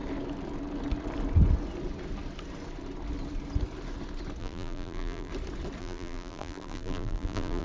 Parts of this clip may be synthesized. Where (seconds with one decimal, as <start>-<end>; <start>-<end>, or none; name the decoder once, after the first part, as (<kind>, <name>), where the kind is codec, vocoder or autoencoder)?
4.4-5.3 (vocoder, BigVGAN v2); 5.8-7.6